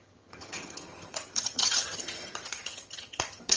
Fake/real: fake